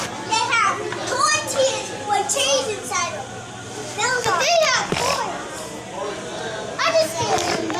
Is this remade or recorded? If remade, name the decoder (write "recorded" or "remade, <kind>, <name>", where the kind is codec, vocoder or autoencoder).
recorded